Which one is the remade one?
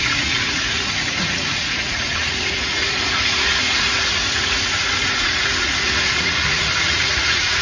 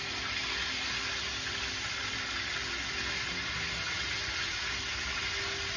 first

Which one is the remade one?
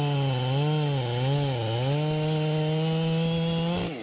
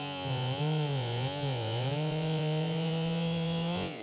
second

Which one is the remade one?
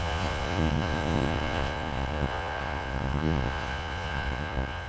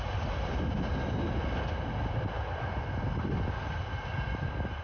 first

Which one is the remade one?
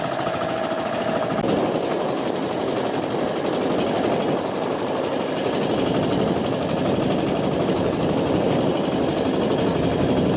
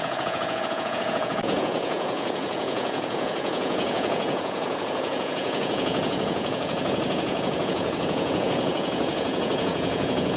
second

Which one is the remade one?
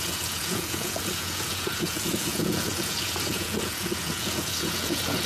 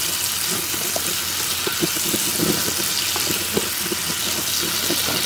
first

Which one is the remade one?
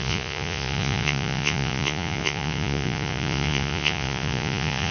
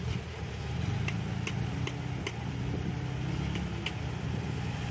first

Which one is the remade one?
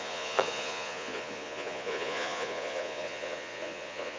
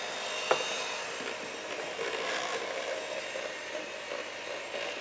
first